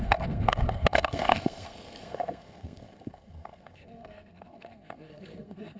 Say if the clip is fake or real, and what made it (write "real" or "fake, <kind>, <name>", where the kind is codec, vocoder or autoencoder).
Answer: fake, codec, SNAC